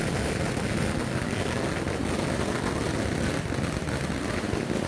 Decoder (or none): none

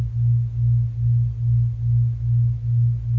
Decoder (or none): none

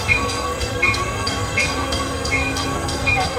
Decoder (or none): codec, SNAC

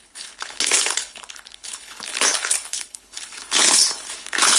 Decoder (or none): codec, HILCodec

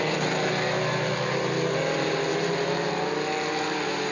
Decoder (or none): none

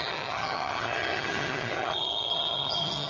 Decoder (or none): vocoder, HiFi-GAN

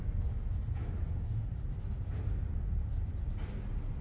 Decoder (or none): none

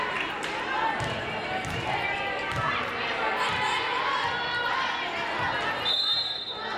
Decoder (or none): none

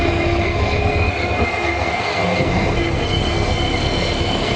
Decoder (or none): codec, SNAC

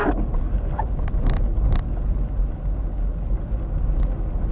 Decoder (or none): none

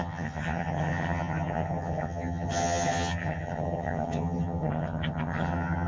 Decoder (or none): vocoder, HiFi-GAN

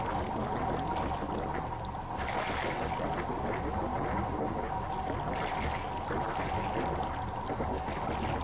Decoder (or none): none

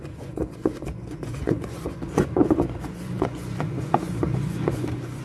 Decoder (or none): vocoder, Vocos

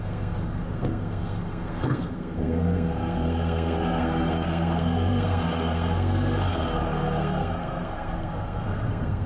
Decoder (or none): codec, SNAC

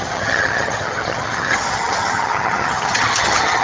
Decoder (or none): vocoder, HiFi-GAN